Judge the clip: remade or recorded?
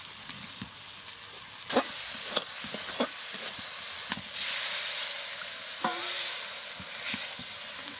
recorded